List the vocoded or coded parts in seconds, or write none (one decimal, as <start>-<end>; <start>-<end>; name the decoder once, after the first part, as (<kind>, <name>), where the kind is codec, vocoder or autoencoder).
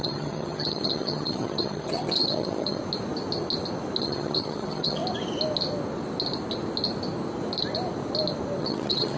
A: 0.0-2.8 (vocoder, HiFi-GAN); 4.0-5.0; 8.6-9.2